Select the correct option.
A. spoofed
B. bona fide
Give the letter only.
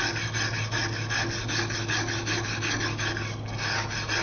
B